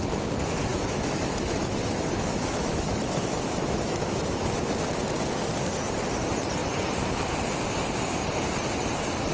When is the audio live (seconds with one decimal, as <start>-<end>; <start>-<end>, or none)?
0.0-0.7; 4.6-9.3